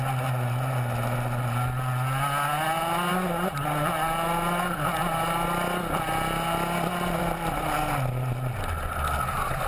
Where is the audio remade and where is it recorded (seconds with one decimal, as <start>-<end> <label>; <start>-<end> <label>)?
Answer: 0.0-9.7 recorded